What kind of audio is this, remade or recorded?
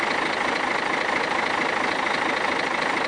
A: recorded